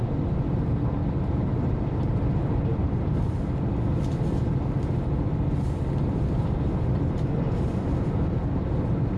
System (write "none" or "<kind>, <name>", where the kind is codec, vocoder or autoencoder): none